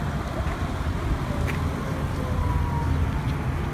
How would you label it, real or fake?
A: real